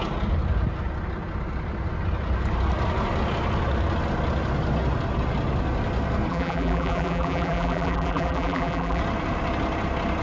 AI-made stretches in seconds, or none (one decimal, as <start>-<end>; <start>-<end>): 6.3-9.0